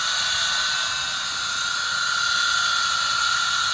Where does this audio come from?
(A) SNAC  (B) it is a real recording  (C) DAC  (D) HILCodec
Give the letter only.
B